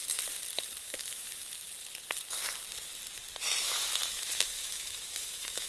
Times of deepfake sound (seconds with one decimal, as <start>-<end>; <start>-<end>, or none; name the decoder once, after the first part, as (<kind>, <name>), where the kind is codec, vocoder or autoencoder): 0.8-1.6 (autoencoder, DAC-VAE); 3.6-5.7